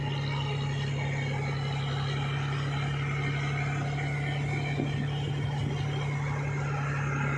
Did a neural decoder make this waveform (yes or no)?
no